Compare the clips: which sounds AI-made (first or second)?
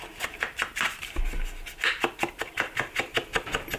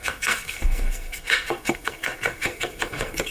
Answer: second